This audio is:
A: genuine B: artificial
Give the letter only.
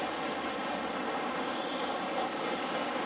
A